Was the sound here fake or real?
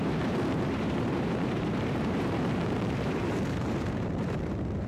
fake